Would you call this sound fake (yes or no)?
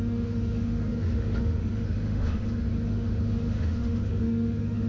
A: yes